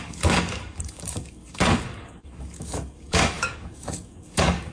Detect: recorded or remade remade